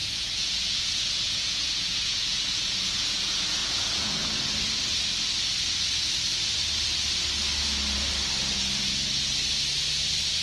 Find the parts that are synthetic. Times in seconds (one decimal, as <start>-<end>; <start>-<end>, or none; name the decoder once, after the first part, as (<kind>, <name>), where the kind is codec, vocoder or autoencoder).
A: 0.0-3.2 (vocoder, Vocos); 3.6-4.2